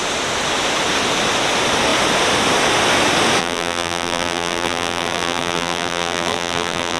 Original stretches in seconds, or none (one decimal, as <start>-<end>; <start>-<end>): 0.0-3.4